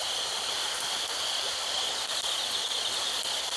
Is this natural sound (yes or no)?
yes